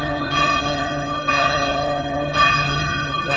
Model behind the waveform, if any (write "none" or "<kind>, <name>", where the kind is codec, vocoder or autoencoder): vocoder, HiFi-GAN